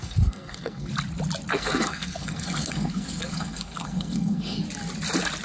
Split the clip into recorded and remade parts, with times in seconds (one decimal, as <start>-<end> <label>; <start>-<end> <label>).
0.0-0.9 remade; 0.9-1.5 recorded; 1.5-4.6 remade; 4.6-5.4 recorded